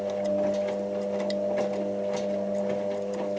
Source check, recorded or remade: recorded